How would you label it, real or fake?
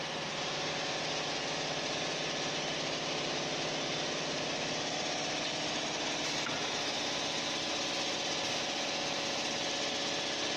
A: real